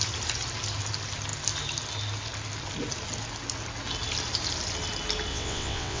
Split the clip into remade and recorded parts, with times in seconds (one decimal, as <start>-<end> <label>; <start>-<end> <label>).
0.0-5.3 recorded; 5.3-6.0 remade